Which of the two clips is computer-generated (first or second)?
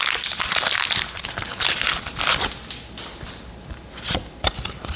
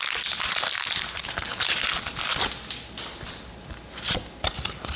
first